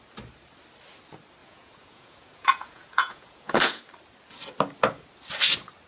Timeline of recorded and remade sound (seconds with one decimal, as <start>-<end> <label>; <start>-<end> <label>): 0.0-1.4 recorded; 1.4-3.8 remade; 3.8-5.9 recorded